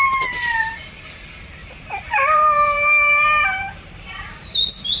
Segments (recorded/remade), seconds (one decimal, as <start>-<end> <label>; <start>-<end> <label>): 0.0-1.6 recorded; 1.6-4.6 remade; 4.6-5.0 recorded